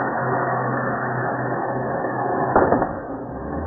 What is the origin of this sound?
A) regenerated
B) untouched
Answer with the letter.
A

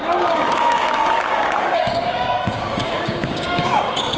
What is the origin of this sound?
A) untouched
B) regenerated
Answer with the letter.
B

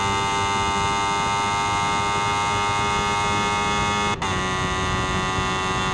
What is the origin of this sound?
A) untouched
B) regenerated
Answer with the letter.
A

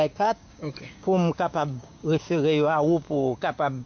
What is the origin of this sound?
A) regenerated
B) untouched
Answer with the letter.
A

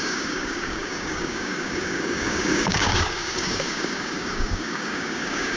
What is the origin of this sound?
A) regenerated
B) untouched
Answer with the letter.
A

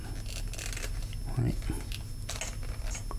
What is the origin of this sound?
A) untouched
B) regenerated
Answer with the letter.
A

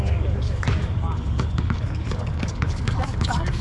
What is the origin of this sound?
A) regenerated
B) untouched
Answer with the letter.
A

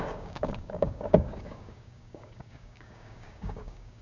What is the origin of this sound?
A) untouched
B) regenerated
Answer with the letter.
B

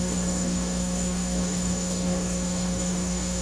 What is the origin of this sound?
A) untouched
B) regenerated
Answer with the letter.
B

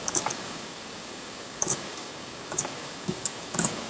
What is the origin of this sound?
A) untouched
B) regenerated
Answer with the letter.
B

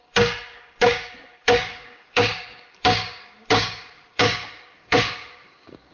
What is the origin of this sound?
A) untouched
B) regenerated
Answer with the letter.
B